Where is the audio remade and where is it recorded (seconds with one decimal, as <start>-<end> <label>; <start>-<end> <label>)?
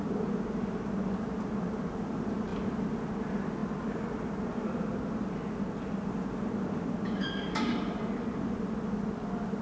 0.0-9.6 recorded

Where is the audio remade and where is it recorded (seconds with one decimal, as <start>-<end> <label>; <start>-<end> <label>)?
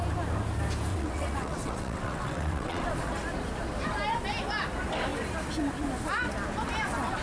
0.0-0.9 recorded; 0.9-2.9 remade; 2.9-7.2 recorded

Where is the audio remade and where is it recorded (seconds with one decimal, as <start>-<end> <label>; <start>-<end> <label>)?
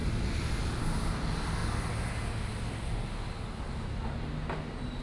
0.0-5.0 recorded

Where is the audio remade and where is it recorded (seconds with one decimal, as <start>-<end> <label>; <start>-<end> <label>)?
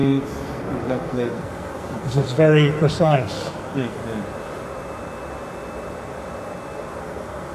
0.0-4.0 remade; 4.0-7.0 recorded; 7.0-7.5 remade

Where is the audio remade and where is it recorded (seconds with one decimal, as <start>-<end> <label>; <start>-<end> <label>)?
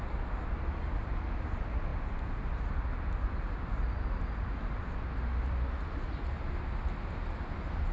0.0-7.9 recorded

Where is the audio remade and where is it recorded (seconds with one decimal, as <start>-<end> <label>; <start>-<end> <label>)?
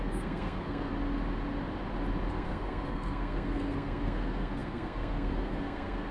0.0-0.9 remade; 0.9-2.3 recorded; 2.3-6.1 remade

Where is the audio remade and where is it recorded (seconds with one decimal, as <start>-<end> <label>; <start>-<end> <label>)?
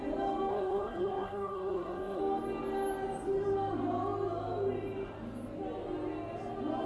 0.0-0.5 recorded; 0.5-2.2 remade; 2.2-6.9 recorded